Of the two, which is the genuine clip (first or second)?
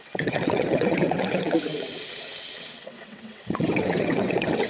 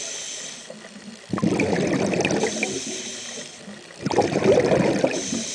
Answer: second